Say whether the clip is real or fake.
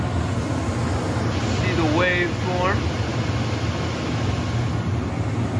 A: real